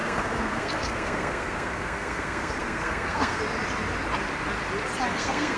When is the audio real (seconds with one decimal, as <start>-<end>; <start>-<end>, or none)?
3.4-5.1

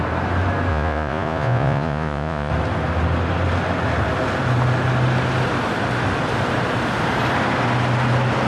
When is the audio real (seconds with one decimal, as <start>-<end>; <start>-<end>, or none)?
0.0-0.7; 2.5-8.5

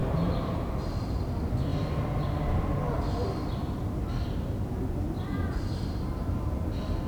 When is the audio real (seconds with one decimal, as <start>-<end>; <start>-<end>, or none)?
0.0-7.1

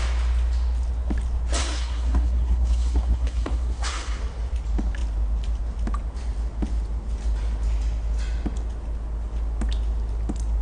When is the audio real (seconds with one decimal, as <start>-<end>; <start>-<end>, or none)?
0.0-1.6; 4.2-10.6

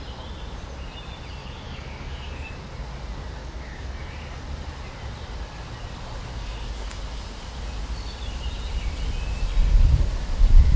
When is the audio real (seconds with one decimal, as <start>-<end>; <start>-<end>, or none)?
0.0-1.4; 2.5-3.4; 4.1-6.3; 7.0-10.8

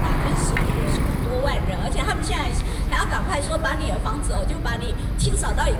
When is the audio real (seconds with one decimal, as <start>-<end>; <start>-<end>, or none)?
0.0-2.2; 4.1-5.8

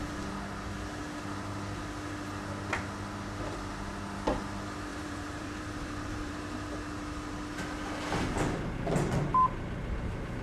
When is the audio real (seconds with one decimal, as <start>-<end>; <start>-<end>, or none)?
0.0-4.9; 6.3-10.4